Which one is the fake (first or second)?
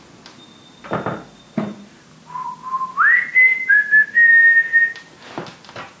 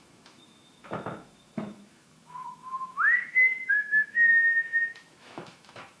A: second